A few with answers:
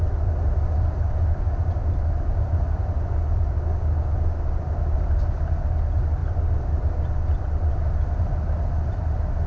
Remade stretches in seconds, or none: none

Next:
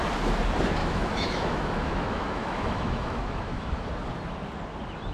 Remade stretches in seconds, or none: 0.8-3.9 (autoencoder, DAC-VAE)

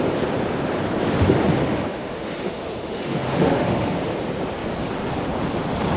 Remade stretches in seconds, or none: 1.6-3.9 (autoencoder, DAC-VAE)

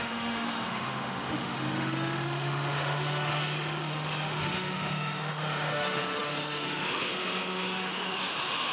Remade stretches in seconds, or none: 0.0-8.7 (autoencoder, DAC-VAE)

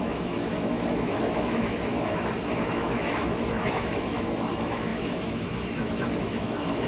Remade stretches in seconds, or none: 0.0-6.9 (autoencoder, DAC-VAE)

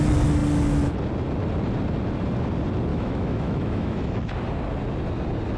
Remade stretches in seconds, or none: 2.9-4.2 (autoencoder, DAC-VAE)

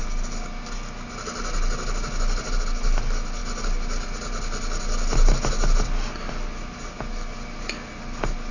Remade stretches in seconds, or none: none

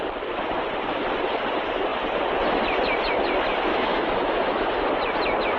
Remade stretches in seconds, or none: 3.7-4.7 (autoencoder, DAC-VAE)